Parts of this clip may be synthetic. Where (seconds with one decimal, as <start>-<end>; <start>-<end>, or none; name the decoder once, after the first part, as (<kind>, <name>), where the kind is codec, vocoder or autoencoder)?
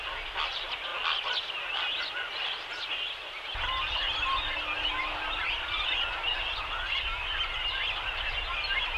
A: none